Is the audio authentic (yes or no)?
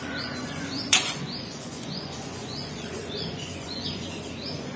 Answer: no